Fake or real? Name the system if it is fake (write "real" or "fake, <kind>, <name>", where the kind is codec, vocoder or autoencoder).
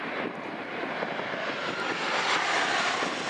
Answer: real